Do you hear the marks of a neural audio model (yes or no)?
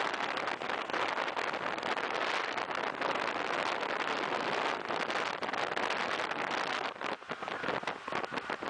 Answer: no